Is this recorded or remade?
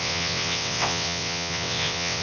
remade